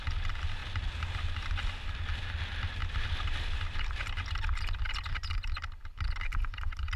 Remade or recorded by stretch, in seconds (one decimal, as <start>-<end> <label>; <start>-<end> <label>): 0.0-2.8 recorded; 2.8-5.7 remade; 5.7-7.0 recorded